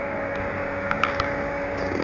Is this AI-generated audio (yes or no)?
yes